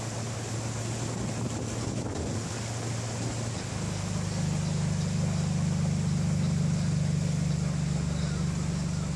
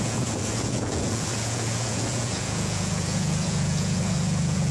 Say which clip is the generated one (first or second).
second